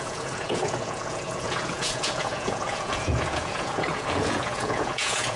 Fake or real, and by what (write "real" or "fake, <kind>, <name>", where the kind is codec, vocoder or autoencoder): fake, vocoder, Vocos